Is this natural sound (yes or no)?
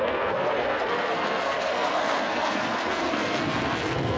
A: no